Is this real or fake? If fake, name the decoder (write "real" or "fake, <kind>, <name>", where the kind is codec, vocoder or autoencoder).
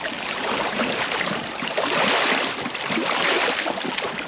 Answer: real